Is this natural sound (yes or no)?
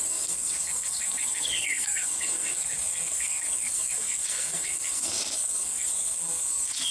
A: no